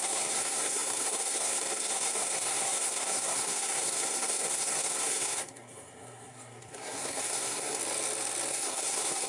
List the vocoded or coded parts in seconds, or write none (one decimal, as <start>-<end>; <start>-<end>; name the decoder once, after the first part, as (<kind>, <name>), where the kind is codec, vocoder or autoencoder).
0.0-7.8 (codec, SNAC); 8.5-9.3